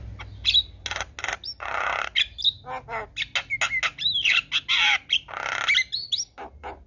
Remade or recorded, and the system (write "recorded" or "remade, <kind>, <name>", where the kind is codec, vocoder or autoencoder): recorded